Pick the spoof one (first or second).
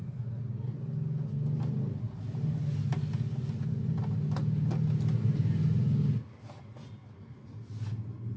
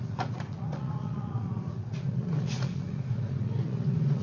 second